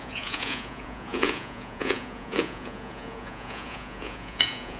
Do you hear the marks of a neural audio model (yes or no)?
yes